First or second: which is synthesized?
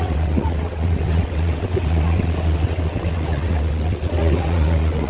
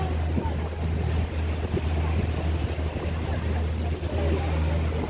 first